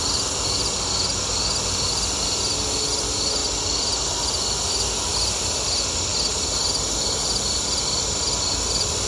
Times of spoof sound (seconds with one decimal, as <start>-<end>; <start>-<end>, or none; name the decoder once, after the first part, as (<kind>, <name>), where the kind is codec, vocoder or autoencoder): none